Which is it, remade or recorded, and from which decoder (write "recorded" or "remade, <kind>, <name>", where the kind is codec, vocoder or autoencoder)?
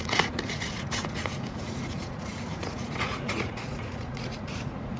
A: remade, vocoder, Vocos